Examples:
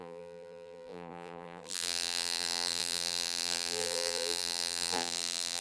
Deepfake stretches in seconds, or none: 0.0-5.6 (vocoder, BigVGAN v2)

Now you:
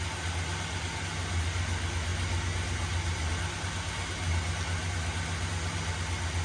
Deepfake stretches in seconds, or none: none

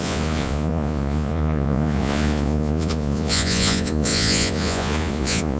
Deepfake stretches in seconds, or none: 0.0-5.6 (vocoder, Vocos)